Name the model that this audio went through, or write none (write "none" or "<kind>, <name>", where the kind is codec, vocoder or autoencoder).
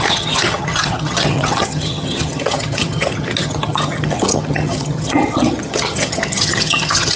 vocoder, HiFi-GAN